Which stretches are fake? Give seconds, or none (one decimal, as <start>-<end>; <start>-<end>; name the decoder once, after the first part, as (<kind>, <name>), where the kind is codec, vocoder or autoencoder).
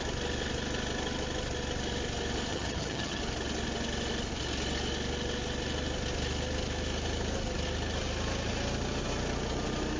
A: 2.5-3.2 (vocoder, HiFi-GAN)